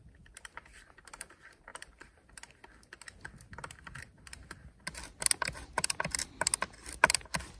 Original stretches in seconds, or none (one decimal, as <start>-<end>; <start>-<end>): 0.0-7.6